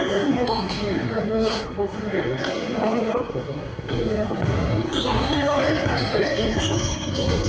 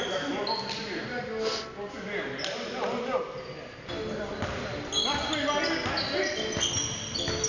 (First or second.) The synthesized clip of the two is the first